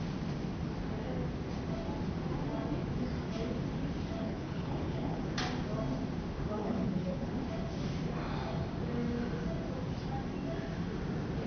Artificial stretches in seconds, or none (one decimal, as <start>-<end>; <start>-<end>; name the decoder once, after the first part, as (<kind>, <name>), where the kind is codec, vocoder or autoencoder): 4.2-5.2 (codec, HILCodec); 6.6-7.3